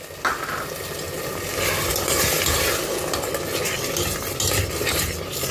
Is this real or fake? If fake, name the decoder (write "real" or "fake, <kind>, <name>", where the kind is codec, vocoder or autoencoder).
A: real